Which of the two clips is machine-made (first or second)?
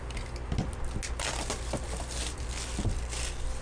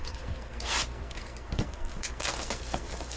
second